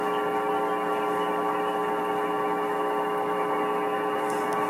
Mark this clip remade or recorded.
recorded